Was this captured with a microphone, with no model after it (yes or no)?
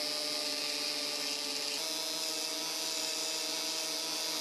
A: yes